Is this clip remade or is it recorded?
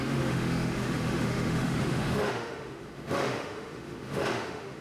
remade